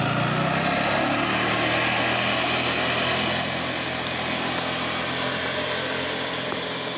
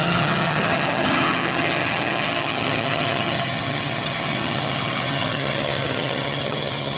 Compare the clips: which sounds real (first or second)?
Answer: first